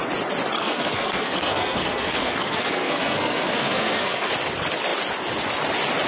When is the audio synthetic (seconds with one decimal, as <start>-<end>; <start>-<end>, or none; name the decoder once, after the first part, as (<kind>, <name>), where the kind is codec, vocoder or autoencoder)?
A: 0.6-4.3 (codec, SNAC)